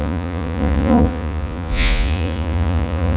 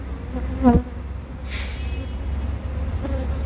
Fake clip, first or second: first